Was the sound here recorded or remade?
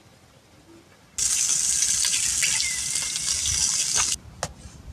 recorded